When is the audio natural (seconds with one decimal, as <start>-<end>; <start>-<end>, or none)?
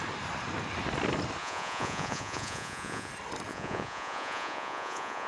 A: 0.0-1.4; 3.1-3.5